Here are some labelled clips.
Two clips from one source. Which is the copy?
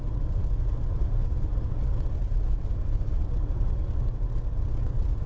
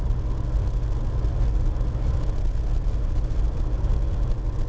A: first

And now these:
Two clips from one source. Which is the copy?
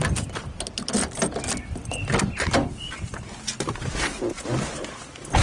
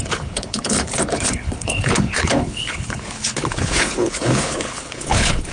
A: second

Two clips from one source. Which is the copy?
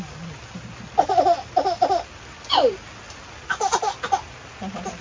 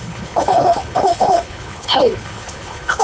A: second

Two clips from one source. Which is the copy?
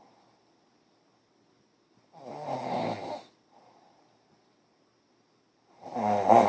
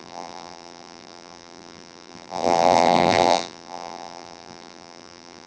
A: second